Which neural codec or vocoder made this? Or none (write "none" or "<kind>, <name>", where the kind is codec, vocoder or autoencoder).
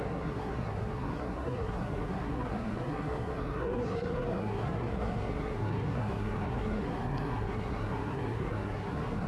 codec, SNAC